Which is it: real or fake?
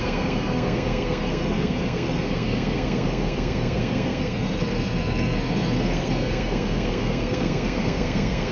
fake